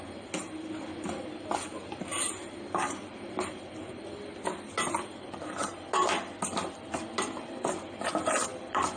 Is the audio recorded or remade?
recorded